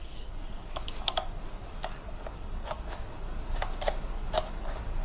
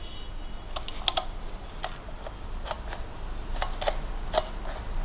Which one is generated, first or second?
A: first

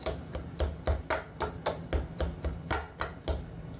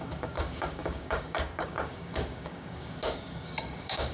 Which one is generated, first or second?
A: second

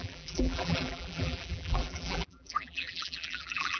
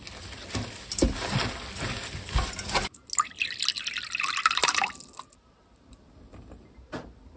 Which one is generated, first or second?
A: first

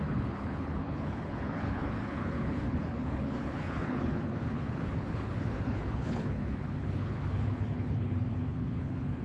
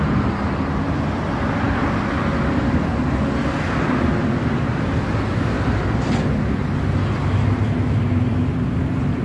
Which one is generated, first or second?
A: first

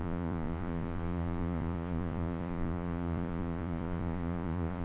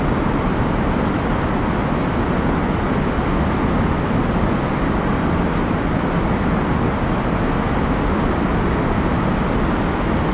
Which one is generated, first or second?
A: first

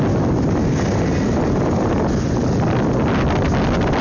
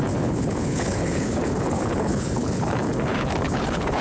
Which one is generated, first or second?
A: second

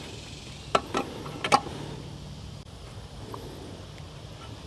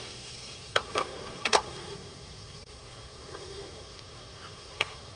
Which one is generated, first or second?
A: second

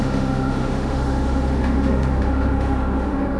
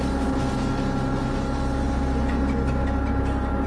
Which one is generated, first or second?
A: first